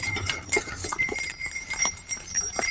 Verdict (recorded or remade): remade